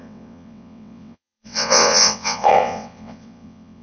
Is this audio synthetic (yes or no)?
yes